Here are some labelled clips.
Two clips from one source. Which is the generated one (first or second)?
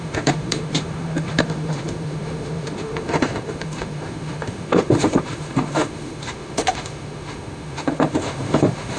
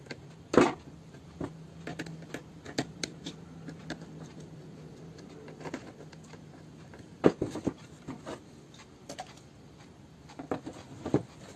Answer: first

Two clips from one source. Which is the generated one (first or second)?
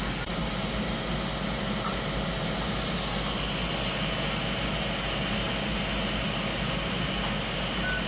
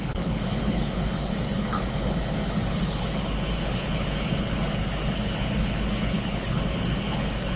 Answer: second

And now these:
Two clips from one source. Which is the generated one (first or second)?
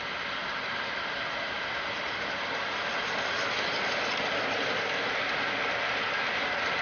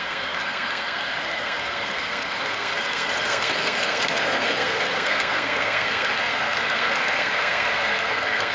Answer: second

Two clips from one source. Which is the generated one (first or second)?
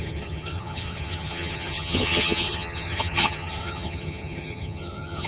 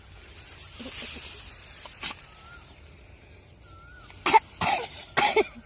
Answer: first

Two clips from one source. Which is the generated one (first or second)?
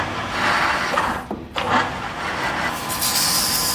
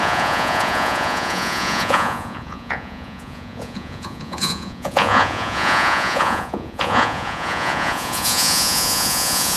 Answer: second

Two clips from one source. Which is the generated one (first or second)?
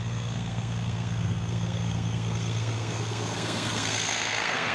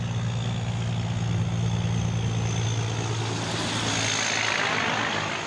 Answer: first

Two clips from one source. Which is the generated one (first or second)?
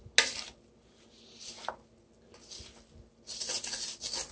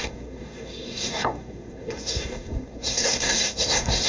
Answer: second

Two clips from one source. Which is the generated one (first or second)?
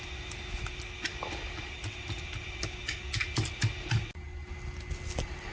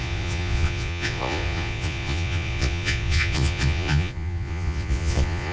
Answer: second